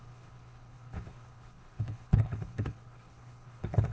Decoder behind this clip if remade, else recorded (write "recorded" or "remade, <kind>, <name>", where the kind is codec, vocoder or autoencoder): remade, codec, HILCodec